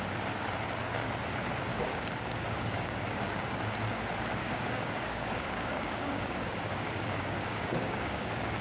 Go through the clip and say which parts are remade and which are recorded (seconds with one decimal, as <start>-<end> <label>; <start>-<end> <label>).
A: 0.0-1.7 recorded; 1.7-3.6 remade; 3.6-4.4 recorded; 4.4-8.6 remade

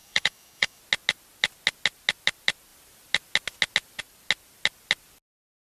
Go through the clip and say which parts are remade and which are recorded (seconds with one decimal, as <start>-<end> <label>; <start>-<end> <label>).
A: 0.0-0.8 remade; 0.8-5.7 recorded

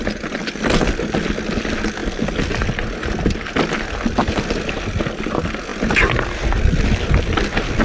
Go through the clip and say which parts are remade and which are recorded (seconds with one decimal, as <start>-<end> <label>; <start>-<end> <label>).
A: 0.0-7.8 recorded

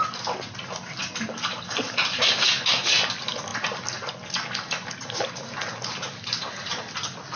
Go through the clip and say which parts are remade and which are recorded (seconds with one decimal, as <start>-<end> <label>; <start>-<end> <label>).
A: 0.0-1.0 recorded; 1.0-2.2 remade; 2.2-7.4 recorded

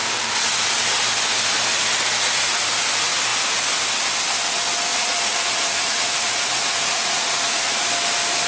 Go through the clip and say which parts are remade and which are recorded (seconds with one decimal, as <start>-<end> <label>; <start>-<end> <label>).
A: 0.0-4.9 recorded; 4.9-7.9 remade; 7.9-8.5 recorded

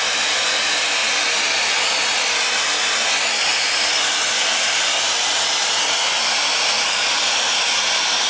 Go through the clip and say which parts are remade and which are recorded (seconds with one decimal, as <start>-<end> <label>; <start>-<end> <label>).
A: 0.0-8.3 recorded